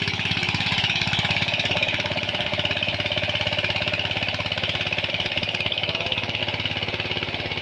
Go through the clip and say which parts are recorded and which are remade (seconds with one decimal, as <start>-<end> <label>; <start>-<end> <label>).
0.0-2.5 remade; 2.5-5.1 recorded; 5.1-6.4 remade; 6.4-7.6 recorded

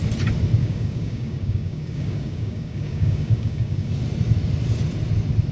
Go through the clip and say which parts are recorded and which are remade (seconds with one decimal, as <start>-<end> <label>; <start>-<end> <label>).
0.0-0.6 recorded; 0.6-3.9 remade; 3.9-5.5 recorded

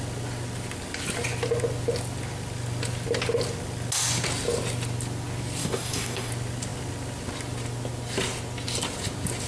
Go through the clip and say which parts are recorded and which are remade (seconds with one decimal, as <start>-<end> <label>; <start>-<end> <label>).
0.0-5.6 recorded; 5.6-6.3 remade; 6.3-9.5 recorded

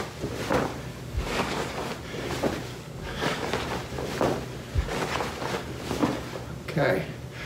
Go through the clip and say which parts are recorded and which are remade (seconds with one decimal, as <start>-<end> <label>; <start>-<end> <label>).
0.0-0.9 recorded; 0.9-1.6 remade; 1.6-2.7 recorded; 2.7-3.5 remade; 3.5-7.4 recorded